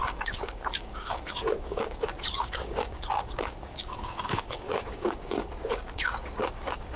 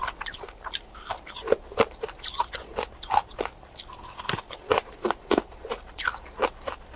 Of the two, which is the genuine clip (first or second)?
second